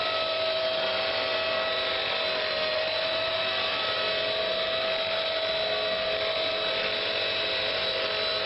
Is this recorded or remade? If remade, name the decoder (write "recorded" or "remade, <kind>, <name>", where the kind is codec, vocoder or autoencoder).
recorded